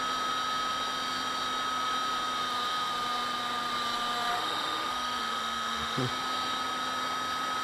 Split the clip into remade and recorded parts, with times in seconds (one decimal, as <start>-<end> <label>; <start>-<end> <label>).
0.0-4.3 recorded; 4.3-6.1 remade; 6.1-7.6 recorded

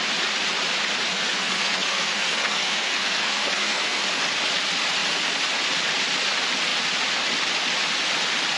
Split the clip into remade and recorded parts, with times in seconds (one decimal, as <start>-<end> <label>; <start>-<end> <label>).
0.0-1.1 recorded; 1.1-4.0 remade; 4.0-8.6 recorded

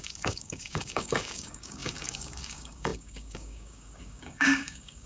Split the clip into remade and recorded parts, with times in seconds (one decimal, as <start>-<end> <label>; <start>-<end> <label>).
0.0-5.1 remade

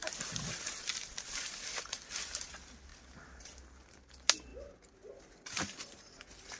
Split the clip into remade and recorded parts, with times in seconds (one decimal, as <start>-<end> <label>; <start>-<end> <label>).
0.0-6.6 recorded

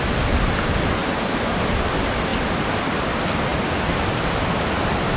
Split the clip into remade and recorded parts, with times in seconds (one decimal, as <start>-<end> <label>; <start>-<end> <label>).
0.0-5.2 recorded

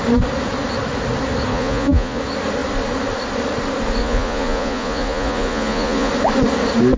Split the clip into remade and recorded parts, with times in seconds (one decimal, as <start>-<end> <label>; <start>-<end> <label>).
0.0-1.5 recorded; 1.5-2.2 remade; 2.2-4.0 recorded; 4.0-6.1 remade; 6.1-7.0 recorded

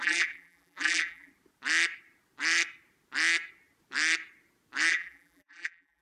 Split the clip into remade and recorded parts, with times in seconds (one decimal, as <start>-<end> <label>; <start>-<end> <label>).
0.0-1.3 remade; 1.3-4.9 recorded; 4.9-6.0 remade